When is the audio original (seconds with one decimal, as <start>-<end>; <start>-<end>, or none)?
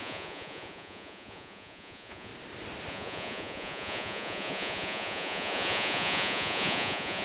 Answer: 2.3-2.9